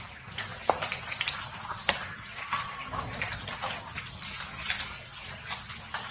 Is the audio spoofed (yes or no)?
no